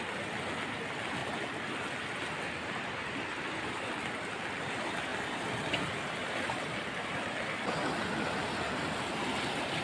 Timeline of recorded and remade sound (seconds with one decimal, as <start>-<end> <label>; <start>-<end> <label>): 0.0-9.8 recorded